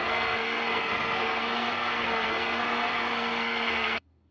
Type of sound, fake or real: fake